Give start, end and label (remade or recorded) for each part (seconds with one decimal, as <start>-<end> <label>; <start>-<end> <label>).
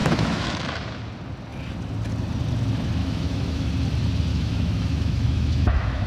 0.0-0.7 remade; 0.7-3.0 recorded; 3.0-3.7 remade; 3.7-4.3 recorded; 4.3-6.1 remade